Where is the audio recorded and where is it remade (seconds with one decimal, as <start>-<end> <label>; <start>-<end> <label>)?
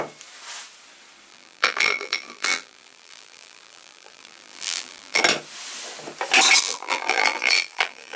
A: 0.0-1.3 recorded; 1.3-5.2 remade; 5.2-6.6 recorded; 6.6-8.2 remade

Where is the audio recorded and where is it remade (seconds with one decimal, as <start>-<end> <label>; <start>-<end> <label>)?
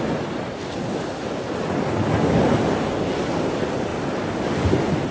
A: 0.0-5.1 recorded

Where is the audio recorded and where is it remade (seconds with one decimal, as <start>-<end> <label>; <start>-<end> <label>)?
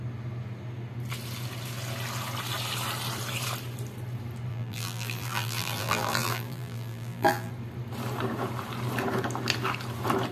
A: 0.0-4.5 recorded; 4.5-7.5 remade; 7.5-10.3 recorded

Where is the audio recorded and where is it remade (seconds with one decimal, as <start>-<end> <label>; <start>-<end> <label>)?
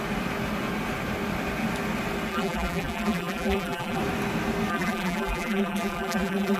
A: 0.0-2.3 recorded; 2.3-4.0 remade; 4.0-4.7 recorded; 4.7-6.6 remade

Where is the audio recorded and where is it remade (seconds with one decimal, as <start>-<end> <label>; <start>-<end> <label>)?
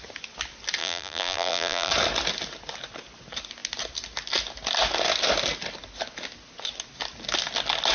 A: 0.0-0.8 recorded; 0.8-1.9 remade; 1.9-7.9 recorded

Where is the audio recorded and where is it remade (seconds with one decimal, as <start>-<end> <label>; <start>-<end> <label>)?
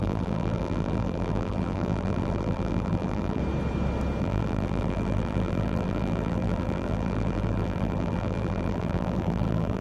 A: 0.0-3.4 remade; 3.4-4.2 recorded; 4.2-9.8 remade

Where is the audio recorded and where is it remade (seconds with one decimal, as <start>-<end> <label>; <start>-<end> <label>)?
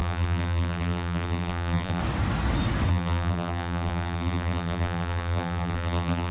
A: 0.0-2.0 remade; 2.0-2.9 recorded; 2.9-6.3 remade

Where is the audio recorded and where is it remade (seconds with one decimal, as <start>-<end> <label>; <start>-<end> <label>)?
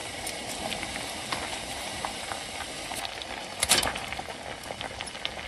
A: 0.0-1.5 recorded; 1.5-2.2 remade; 2.2-3.4 recorded; 3.4-4.1 remade; 4.1-5.5 recorded